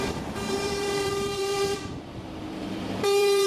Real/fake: fake